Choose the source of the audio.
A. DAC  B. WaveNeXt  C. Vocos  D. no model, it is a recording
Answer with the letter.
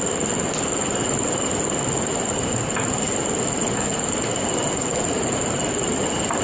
D